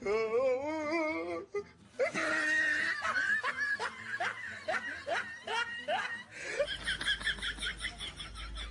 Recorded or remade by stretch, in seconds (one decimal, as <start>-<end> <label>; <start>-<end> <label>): 0.0-8.7 recorded